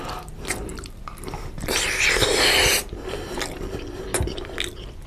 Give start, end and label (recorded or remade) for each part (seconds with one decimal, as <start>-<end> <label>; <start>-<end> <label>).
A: 0.0-0.7 recorded; 0.7-2.0 remade; 2.0-5.1 recorded